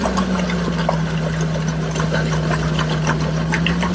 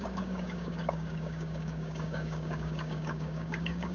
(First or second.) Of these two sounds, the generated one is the second